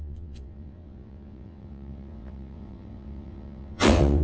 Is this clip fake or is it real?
fake